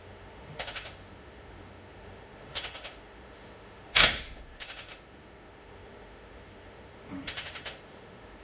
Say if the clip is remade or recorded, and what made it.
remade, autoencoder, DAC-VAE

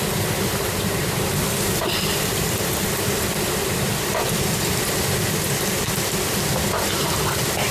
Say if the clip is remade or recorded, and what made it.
remade, vocoder, BigVGAN v2